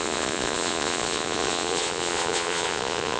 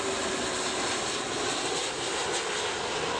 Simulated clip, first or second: first